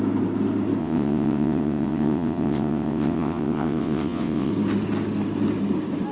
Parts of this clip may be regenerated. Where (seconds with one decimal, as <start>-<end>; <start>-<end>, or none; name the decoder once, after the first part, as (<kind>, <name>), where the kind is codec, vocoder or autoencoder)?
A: 0.8-4.5 (vocoder, WaveNeXt)